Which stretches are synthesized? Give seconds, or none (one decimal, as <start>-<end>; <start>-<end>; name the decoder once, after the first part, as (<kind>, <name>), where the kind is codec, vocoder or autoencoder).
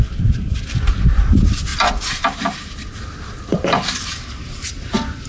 0.0-5.3 (vocoder, BigVGAN v2)